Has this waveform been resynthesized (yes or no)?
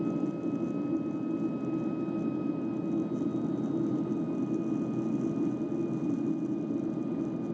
no